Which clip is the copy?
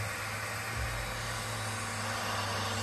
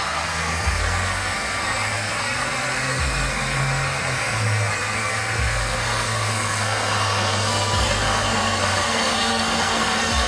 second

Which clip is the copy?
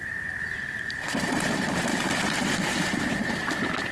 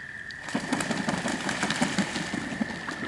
first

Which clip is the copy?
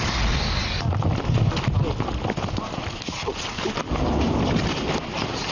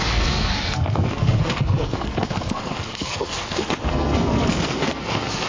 second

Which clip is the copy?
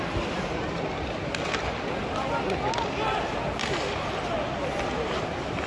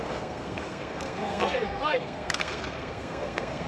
second